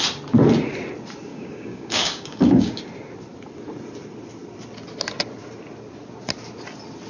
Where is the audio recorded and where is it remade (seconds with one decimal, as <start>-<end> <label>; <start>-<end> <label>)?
0.0-1.3 recorded; 1.3-2.8 remade; 2.8-7.1 recorded